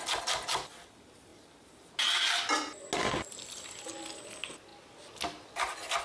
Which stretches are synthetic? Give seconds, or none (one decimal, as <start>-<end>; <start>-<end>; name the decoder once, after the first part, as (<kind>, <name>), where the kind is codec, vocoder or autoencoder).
none